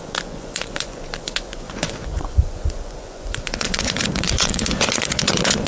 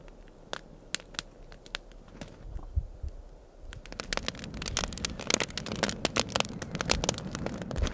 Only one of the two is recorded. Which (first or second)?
second